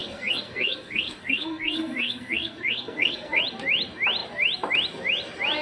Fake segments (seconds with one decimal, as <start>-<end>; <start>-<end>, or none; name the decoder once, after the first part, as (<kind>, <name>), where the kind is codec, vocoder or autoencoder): 0.0-3.4 (codec, SNAC)